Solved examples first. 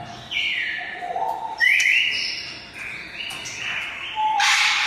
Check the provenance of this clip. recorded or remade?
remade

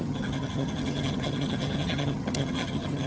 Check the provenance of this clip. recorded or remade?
remade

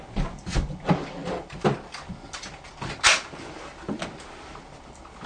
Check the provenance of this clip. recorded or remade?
recorded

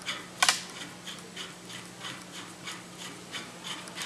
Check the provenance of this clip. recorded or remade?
recorded